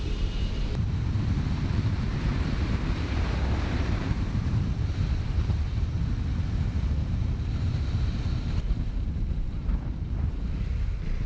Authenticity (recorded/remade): remade